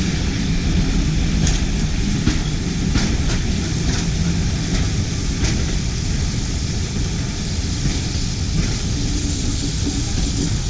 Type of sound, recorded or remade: recorded